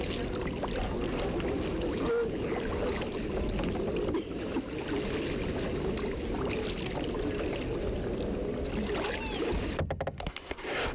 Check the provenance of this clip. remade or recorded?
recorded